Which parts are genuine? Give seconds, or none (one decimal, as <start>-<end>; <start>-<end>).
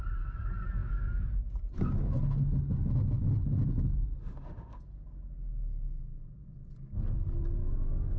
0.0-4.2; 4.8-8.2